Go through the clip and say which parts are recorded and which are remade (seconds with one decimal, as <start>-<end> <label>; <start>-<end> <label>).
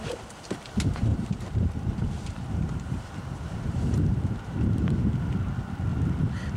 0.0-1.1 recorded; 1.1-4.6 remade; 4.6-5.9 recorded; 5.9-6.6 remade